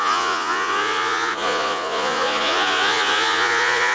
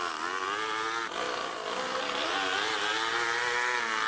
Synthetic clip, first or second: first